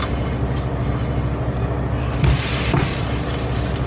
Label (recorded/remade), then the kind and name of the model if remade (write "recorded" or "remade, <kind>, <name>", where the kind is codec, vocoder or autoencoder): recorded